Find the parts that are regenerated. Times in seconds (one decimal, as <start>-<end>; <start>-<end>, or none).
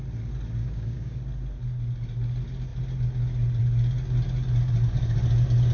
0.6-1.2